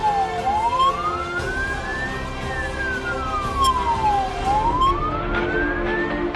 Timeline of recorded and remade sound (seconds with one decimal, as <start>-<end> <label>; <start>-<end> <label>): 0.0-6.4 recorded

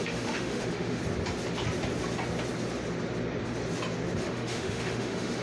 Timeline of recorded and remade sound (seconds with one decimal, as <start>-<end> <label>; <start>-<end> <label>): 0.0-1.0 remade; 1.0-4.2 recorded; 4.2-5.4 remade

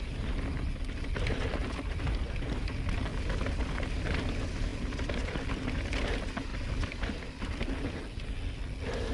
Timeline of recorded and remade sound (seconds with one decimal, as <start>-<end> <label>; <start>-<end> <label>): 0.0-1.6 recorded; 1.6-2.7 remade; 2.7-3.1 recorded; 3.1-4.2 remade; 4.2-4.7 recorded; 4.7-5.4 remade; 5.4-9.1 recorded

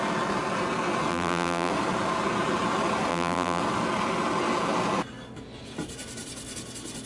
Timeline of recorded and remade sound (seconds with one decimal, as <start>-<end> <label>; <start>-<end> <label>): 0.0-1.1 recorded; 1.1-1.7 remade; 1.7-3.1 recorded; 3.1-3.6 remade; 3.6-7.1 recorded

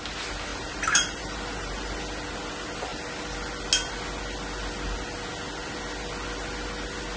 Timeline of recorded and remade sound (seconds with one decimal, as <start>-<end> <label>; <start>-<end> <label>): 0.0-0.5 recorded; 0.5-2.0 remade; 2.0-7.2 recorded

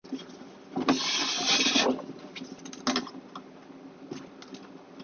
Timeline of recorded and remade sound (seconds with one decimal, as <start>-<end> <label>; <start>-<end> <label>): 0.0-5.0 recorded

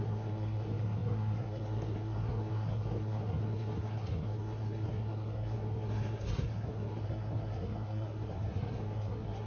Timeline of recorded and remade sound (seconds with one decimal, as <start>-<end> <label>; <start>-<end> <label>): 0.0-9.5 remade